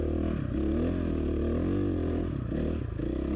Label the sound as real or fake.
real